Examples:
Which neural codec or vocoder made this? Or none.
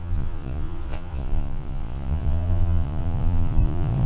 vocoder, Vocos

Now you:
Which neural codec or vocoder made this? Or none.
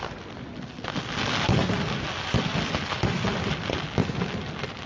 none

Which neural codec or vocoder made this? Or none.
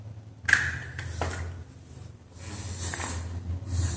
none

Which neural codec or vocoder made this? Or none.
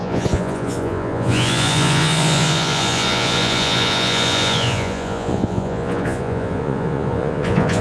vocoder, Vocos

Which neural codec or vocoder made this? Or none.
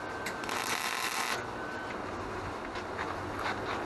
none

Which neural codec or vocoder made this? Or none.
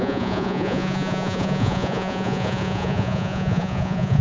vocoder, Vocos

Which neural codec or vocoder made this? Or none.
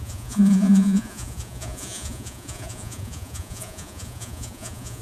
vocoder, Vocos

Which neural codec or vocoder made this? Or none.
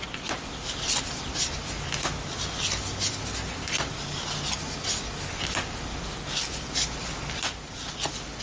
none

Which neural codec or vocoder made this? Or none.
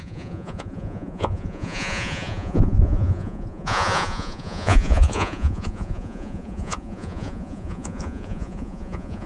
vocoder, Vocos